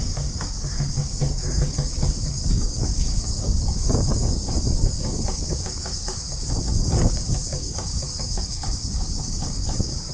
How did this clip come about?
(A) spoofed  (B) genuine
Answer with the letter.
A